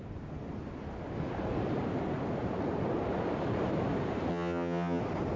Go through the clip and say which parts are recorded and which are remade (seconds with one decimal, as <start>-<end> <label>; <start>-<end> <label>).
0.0-4.3 recorded; 4.3-5.0 remade; 5.0-5.4 recorded